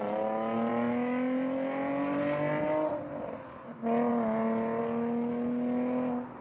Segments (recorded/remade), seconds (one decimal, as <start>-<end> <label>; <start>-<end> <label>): 0.0-6.4 recorded